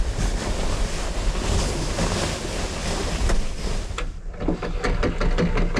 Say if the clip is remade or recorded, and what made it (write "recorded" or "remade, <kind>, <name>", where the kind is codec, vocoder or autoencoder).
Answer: recorded